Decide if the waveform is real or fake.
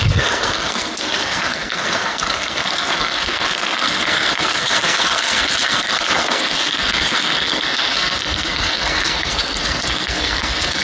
fake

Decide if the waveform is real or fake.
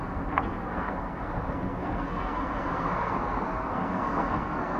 fake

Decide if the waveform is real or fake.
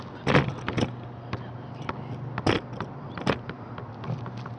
real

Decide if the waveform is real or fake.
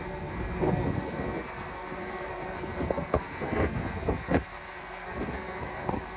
fake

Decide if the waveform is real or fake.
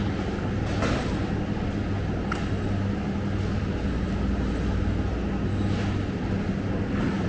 real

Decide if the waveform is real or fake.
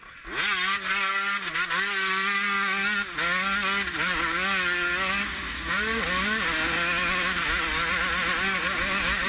real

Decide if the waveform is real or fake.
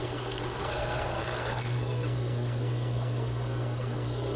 fake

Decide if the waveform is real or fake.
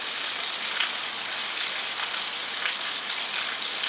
real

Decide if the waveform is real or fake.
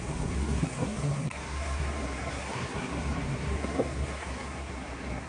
fake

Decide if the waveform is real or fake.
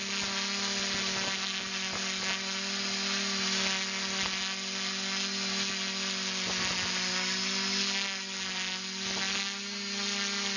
real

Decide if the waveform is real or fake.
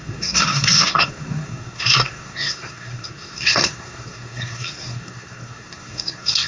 fake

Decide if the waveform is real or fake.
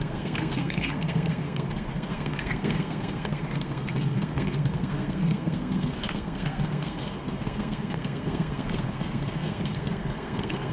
fake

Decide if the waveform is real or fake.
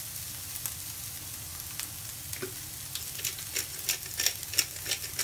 real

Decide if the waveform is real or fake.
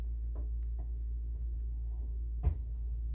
real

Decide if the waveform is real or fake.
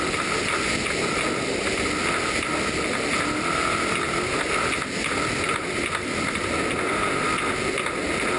real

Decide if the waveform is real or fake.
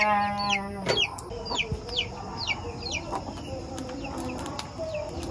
real